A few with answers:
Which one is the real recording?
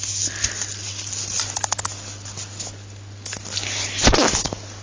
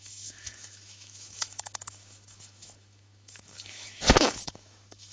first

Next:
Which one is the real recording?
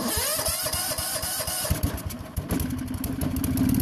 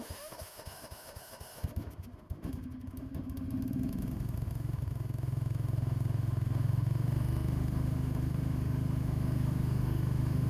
first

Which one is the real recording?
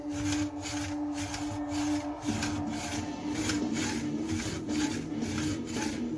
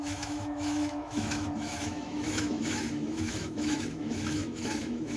first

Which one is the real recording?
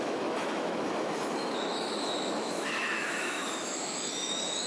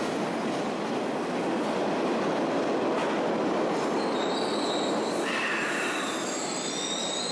second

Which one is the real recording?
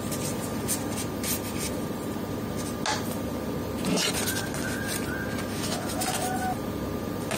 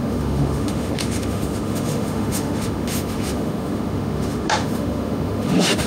first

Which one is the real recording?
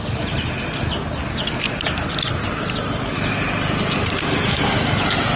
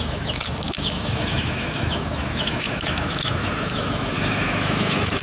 first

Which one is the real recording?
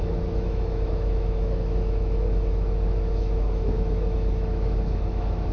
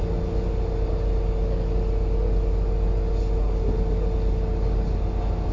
second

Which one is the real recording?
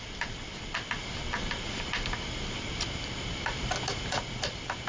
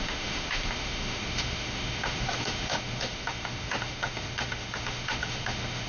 first